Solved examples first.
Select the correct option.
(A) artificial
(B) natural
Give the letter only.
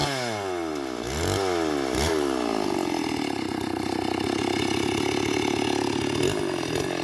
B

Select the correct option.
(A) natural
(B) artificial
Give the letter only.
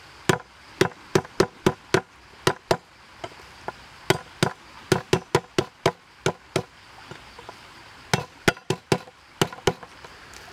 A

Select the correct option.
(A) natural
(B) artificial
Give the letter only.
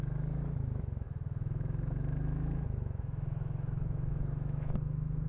B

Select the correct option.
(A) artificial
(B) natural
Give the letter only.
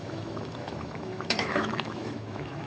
A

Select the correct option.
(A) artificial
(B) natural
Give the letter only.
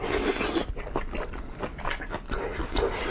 B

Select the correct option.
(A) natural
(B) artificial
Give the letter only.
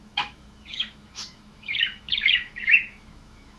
B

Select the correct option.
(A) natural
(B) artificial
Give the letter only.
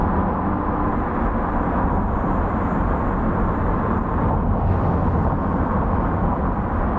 A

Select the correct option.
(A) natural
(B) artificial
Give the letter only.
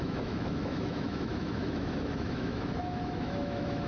B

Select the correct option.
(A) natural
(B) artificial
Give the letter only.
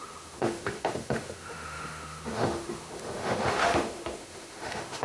B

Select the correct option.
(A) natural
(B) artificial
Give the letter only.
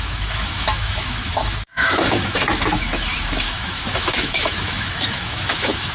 B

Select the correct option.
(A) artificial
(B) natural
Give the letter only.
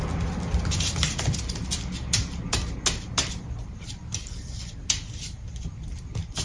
B